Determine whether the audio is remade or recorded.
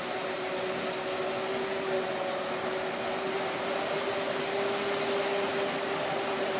recorded